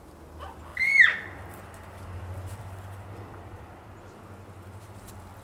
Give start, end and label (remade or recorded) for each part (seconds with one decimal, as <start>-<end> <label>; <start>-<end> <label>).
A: 0.0-0.7 recorded; 0.7-3.9 remade; 3.9-5.4 recorded